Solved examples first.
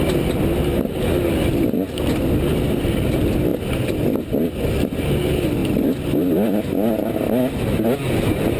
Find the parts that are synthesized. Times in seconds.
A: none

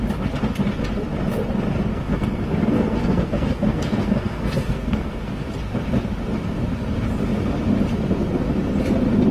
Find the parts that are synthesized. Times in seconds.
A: 1.9-5.4 (codec, SNAC)

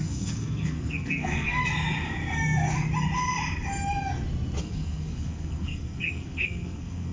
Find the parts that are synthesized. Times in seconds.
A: 0.0-1.6 (codec, SNAC); 4.6-7.1